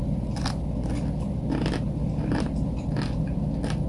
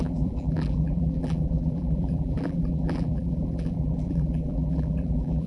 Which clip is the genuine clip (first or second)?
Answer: first